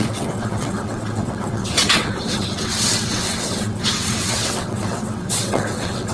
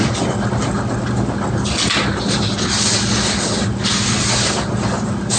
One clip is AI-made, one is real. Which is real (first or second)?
second